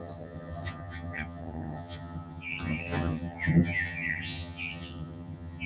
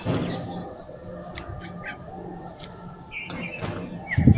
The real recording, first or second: second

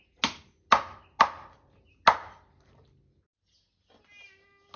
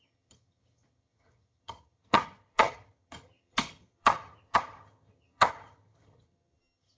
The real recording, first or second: first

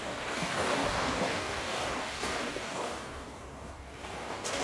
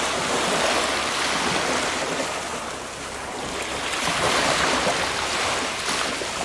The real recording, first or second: second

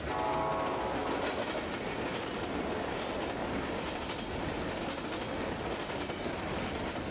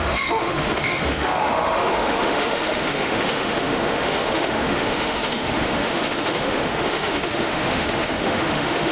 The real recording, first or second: first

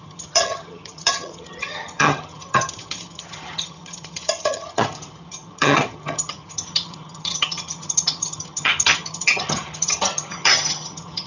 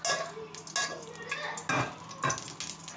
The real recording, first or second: second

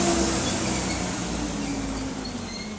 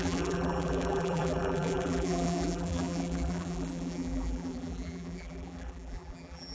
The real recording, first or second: first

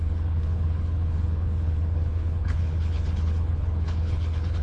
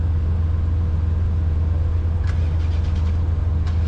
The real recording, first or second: second